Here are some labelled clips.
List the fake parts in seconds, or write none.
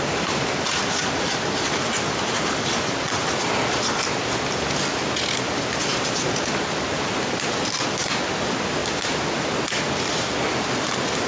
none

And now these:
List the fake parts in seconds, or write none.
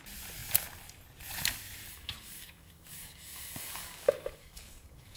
1.9-5.2 (codec, DAC)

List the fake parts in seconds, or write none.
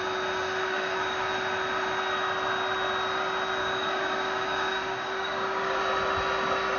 0.6-1.3 (codec, DAC); 3.6-5.8